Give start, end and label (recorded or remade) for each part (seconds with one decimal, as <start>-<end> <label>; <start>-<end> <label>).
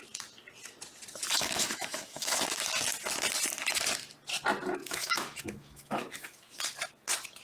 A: 0.0-1.3 recorded; 1.3-2.4 remade; 2.4-4.8 recorded; 4.8-6.6 remade; 6.6-7.4 recorded